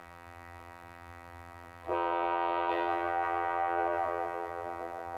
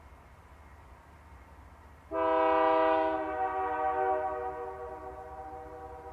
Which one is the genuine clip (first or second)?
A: second